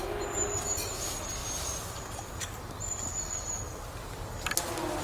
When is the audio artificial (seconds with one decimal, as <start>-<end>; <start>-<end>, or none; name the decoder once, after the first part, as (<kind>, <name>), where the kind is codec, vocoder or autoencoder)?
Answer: none